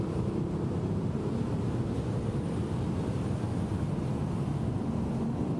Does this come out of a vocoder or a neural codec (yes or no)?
no